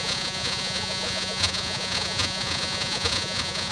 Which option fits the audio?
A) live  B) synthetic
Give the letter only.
B